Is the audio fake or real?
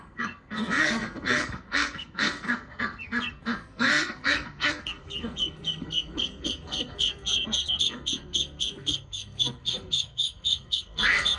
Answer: fake